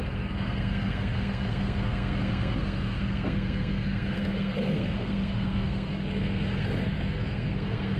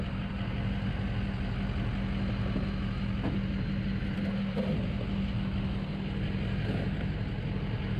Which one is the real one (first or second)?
second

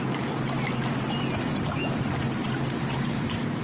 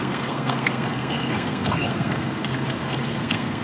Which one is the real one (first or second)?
first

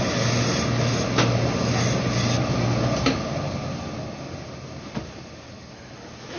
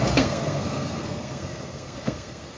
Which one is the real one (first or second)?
first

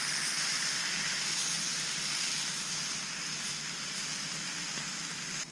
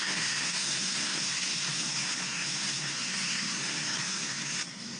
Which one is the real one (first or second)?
first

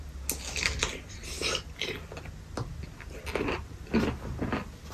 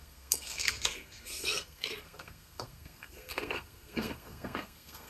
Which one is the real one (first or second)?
first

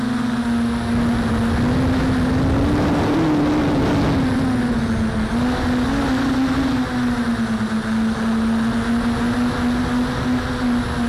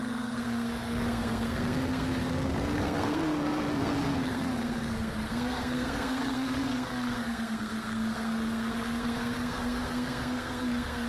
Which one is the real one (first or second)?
first